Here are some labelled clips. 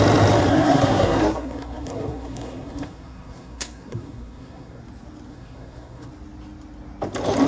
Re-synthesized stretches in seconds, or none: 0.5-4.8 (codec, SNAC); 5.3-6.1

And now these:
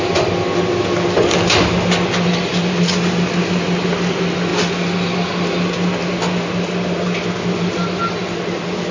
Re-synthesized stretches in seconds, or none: none

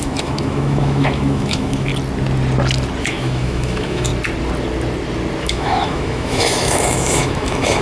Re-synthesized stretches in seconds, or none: 0.0-1.9 (autoencoder, DAC-VAE); 3.0-4.1; 5.4-7.8

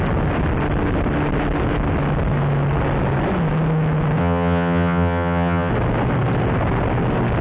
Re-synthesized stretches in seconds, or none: 4.2-5.7 (vocoder, HiFi-GAN)

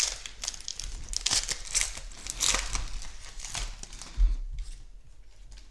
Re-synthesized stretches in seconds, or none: none